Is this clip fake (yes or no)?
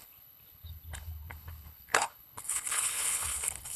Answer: yes